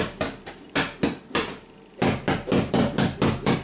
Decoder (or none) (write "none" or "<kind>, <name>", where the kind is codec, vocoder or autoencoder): none